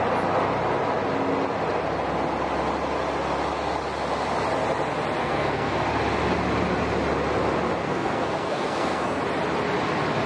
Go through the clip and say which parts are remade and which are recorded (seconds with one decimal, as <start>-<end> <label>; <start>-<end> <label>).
0.0-5.2 recorded; 5.2-5.8 remade; 5.8-7.8 recorded; 7.8-9.2 remade; 9.2-10.3 recorded